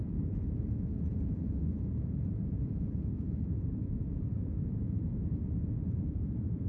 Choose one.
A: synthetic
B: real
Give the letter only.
A